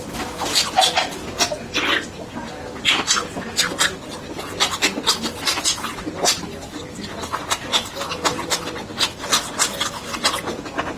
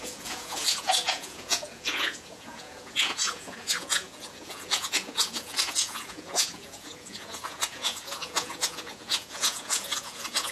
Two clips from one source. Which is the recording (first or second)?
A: first